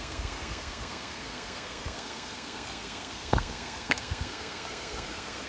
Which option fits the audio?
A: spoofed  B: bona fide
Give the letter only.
A